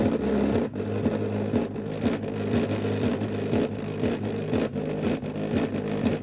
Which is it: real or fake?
real